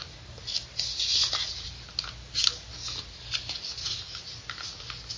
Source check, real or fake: real